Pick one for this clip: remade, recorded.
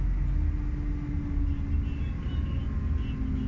recorded